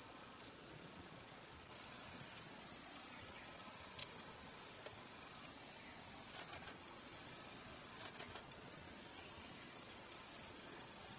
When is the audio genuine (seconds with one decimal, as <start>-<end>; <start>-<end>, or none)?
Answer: 4.0-6.3; 7.1-8.1